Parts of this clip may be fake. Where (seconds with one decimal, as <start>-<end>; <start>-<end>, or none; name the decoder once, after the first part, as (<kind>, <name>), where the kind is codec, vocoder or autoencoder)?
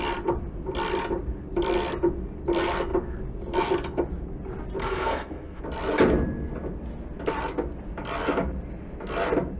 4.8-5.6 (codec, SNAC)